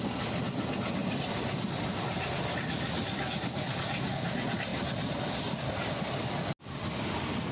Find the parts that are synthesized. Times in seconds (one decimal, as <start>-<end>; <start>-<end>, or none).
none